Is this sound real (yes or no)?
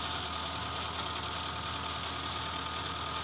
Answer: yes